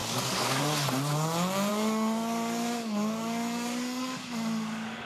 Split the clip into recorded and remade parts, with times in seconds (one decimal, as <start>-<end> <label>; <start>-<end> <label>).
0.0-0.6 remade; 0.6-1.7 recorded; 1.7-5.1 remade